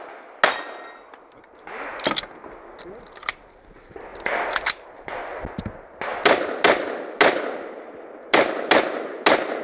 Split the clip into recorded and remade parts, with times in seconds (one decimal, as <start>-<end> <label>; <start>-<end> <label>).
0.0-9.6 recorded